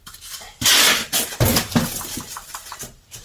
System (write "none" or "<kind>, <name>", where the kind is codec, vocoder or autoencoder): none